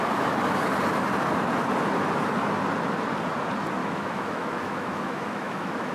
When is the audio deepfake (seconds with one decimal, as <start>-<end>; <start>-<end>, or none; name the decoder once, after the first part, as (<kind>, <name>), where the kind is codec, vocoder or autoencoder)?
3.8-5.9 (autoencoder, DAC-VAE)